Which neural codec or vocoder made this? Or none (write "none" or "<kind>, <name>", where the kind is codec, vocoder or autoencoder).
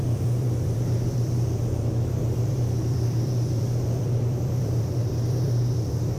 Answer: vocoder, BigVGAN v2